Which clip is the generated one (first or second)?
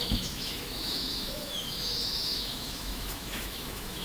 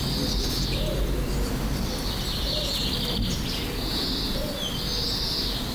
first